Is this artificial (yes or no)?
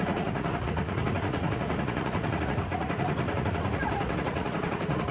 yes